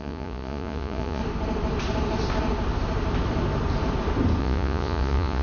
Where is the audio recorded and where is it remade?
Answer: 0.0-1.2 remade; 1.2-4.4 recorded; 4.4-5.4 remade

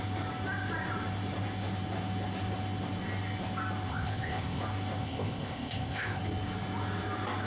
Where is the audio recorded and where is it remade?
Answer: 0.0-3.9 recorded; 3.9-4.6 remade; 4.6-5.0 recorded; 5.0-6.2 remade; 6.2-7.5 recorded